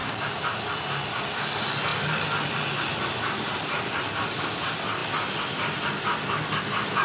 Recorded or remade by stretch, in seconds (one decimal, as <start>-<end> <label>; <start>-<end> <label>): 0.0-7.0 recorded